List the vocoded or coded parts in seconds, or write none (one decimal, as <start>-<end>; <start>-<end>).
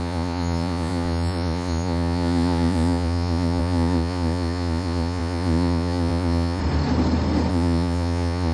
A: 0.0-6.6; 7.5-8.5